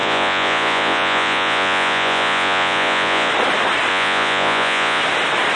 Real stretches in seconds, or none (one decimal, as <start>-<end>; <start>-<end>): 3.3-3.9; 5.0-5.6

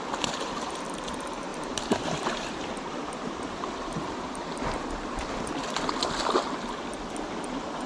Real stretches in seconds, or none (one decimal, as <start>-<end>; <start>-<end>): 0.0-1.5; 5.5-7.9

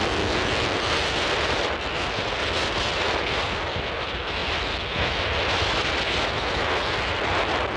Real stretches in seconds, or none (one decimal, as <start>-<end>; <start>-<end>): 0.0-7.8

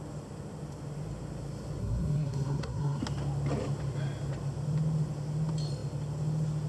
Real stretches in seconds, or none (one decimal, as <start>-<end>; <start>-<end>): 0.0-1.8; 3.0-6.7

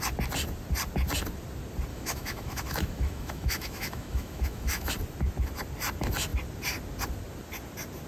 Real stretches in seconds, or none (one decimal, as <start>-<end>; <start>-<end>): 0.0-1.9; 4.9-8.1

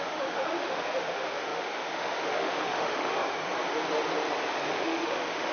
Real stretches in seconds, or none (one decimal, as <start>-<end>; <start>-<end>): 3.2-4.7